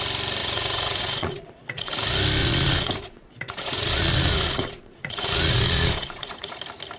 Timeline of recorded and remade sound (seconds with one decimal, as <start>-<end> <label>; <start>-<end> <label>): 0.0-0.4 recorded; 0.4-1.9 remade; 1.9-2.4 recorded; 2.4-6.6 remade; 6.6-7.0 recorded